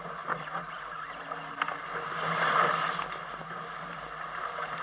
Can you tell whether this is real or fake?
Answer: real